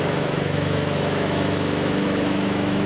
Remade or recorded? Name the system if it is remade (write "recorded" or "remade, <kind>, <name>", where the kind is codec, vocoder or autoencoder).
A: remade, autoencoder, DAC-VAE